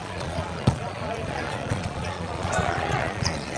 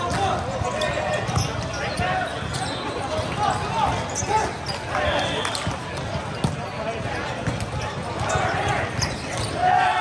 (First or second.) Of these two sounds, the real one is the second